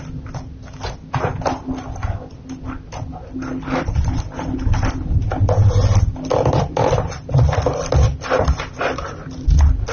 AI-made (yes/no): no